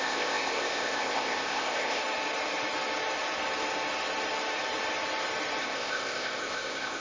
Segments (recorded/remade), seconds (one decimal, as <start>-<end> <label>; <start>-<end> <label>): 0.0-2.0 remade; 2.0-5.6 recorded; 5.6-7.0 remade